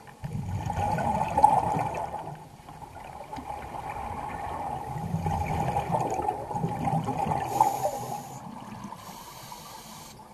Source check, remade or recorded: recorded